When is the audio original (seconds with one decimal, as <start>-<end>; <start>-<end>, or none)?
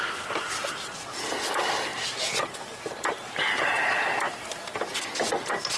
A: 1.9-4.3